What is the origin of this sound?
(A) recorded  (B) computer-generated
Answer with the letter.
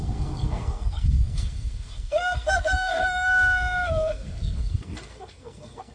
B